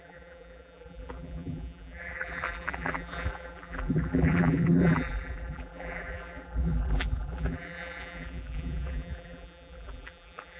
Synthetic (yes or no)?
yes